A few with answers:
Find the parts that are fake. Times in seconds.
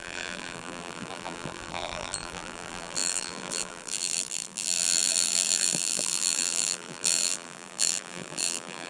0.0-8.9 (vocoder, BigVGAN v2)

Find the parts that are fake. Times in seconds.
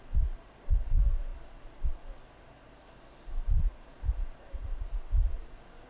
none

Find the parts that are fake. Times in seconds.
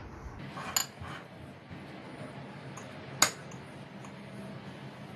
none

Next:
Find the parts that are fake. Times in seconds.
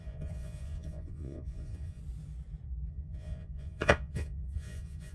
0.0-2.0 (vocoder, Vocos); 2.9-5.1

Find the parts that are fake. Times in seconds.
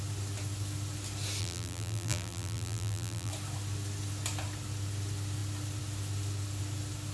1.4-3.3 (vocoder, BigVGAN v2)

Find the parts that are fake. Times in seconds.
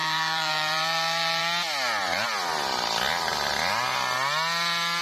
0.0-1.4 (vocoder, BigVGAN v2)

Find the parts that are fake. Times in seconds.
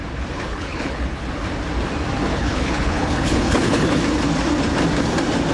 0.5-1.3 (codec, HILCodec); 2.3-4.0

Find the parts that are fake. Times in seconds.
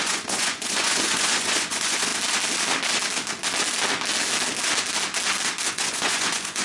0.0-2.1 (vocoder, Vocos); 5.7-6.6